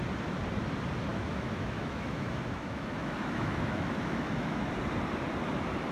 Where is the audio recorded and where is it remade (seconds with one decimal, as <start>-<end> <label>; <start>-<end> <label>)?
0.0-1.1 recorded; 1.1-4.6 remade; 4.6-5.9 recorded